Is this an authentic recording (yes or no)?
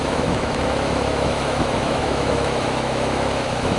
no